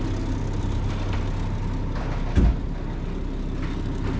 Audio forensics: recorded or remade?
recorded